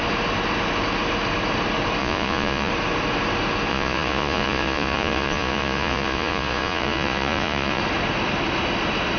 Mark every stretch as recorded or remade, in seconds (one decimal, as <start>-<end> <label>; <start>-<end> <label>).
0.0-2.0 recorded; 2.0-2.7 remade; 2.7-3.7 recorded; 3.7-7.8 remade; 7.8-9.2 recorded